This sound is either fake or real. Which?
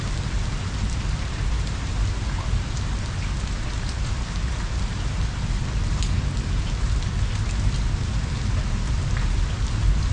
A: real